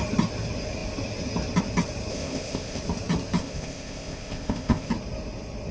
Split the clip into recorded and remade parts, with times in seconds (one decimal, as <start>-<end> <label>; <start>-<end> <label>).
0.0-2.1 recorded; 2.1-2.8 remade; 2.8-3.4 recorded; 3.4-4.9 remade; 4.9-5.7 recorded